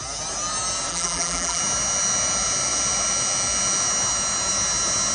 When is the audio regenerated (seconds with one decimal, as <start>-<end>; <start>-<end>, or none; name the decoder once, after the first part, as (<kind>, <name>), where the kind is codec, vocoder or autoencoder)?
0.9-1.6 (vocoder, BigVGAN v2)